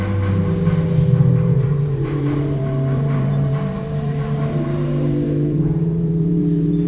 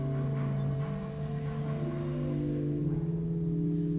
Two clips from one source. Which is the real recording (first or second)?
second